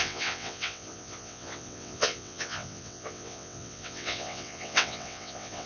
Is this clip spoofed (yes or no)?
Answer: yes